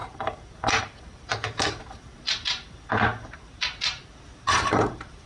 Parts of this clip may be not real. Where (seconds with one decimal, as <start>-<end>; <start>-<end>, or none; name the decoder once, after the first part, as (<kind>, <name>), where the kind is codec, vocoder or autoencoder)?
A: 0.8-1.3 (vocoder, BigVGAN v2); 4.5-5.3